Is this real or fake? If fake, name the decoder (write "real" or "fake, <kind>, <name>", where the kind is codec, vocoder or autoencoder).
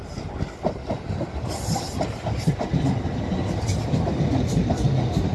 real